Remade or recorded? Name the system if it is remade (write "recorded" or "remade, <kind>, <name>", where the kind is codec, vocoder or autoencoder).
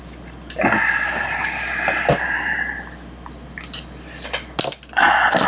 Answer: recorded